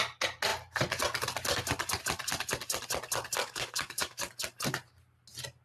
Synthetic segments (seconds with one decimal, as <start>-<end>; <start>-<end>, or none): 3.4-4.3